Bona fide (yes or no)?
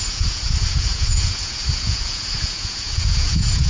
no